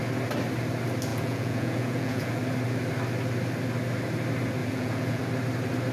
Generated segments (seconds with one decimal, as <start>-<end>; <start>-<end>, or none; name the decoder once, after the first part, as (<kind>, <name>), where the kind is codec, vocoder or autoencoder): 1.1-2.4 (vocoder, Vocos); 4.6-5.2